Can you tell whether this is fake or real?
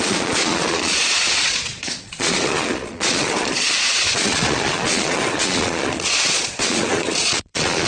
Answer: fake